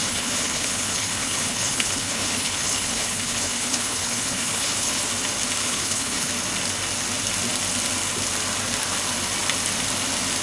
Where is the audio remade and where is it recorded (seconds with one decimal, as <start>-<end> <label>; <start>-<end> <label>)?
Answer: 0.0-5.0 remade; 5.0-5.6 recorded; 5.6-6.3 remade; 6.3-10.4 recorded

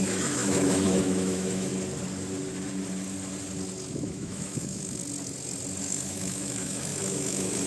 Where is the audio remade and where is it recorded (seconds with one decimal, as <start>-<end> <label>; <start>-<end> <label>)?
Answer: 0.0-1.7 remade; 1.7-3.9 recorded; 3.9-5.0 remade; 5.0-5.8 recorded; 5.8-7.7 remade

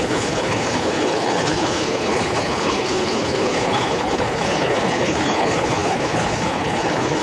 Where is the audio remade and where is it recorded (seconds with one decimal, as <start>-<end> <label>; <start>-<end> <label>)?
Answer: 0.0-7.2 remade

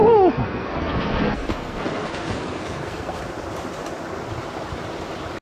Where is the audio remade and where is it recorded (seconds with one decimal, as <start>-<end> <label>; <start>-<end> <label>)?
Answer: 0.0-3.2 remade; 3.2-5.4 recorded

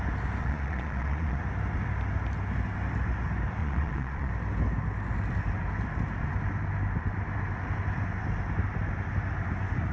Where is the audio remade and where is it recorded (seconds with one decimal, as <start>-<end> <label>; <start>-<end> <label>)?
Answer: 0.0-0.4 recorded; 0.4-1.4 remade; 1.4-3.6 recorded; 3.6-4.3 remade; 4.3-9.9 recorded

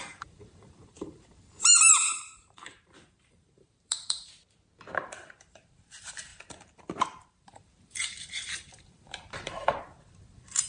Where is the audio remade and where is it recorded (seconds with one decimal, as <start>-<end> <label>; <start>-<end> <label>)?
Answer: 0.0-4.3 remade; 4.3-5.0 recorded; 5.0-10.7 remade

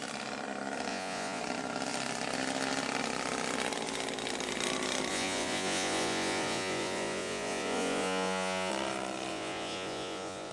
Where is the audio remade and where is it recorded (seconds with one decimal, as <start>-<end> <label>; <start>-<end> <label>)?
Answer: 0.0-0.9 recorded; 0.9-1.4 remade; 1.4-5.1 recorded; 5.1-8.7 remade; 8.7-9.3 recorded; 9.3-10.5 remade

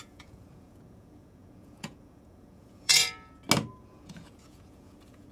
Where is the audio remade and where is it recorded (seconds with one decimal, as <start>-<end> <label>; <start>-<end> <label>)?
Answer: 0.0-2.9 remade; 2.9-3.7 recorded; 3.7-5.3 remade